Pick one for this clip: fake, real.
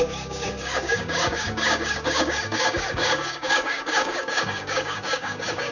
fake